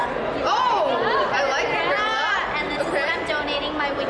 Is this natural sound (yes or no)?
yes